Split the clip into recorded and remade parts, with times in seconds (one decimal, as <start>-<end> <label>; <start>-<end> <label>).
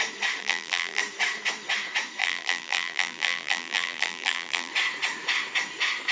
0.0-0.4 recorded; 0.4-1.0 remade; 1.0-2.2 recorded; 2.2-4.7 remade; 4.7-6.1 recorded